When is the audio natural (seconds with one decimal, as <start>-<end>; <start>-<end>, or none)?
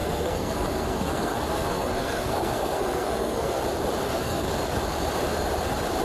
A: 3.6-4.0; 4.5-6.0